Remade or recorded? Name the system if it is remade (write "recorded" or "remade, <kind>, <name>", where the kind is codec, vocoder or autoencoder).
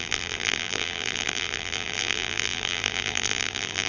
remade, vocoder, BigVGAN v2